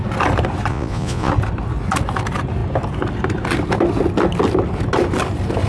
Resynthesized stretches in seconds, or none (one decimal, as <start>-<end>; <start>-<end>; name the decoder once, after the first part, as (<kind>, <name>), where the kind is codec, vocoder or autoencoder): 0.7-1.3 (vocoder, Vocos)